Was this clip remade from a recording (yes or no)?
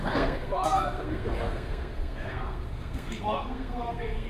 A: yes